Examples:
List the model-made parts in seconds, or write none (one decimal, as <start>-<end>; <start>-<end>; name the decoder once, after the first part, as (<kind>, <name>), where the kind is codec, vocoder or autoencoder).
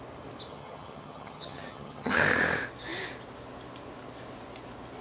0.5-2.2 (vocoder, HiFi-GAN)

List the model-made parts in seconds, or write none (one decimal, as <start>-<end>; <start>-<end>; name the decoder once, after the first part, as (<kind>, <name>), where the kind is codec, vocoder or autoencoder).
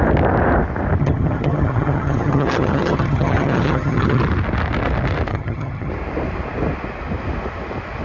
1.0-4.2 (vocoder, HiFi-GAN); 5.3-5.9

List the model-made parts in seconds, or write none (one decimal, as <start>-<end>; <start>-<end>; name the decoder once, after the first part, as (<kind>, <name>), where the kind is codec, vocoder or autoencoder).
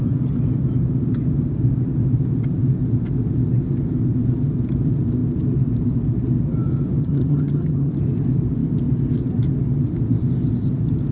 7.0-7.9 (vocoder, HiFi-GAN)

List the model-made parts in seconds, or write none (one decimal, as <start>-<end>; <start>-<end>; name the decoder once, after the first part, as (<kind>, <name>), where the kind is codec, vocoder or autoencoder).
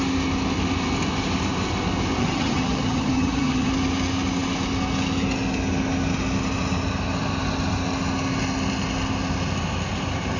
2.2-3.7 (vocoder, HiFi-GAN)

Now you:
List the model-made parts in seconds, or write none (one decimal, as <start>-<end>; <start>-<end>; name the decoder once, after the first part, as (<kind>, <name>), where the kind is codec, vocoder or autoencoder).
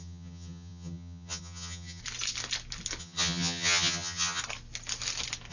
0.0-2.0 (vocoder, HiFi-GAN); 3.0-4.4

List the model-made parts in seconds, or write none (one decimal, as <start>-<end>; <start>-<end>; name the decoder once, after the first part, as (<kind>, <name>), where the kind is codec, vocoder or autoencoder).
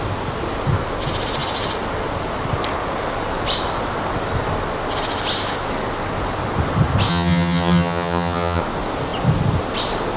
7.1-8.6 (vocoder, HiFi-GAN)